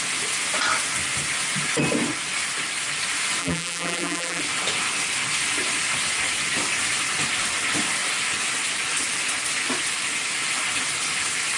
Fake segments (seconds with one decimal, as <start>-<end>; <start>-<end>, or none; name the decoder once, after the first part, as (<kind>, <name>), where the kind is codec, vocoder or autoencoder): 3.4-4.4 (vocoder, BigVGAN v2)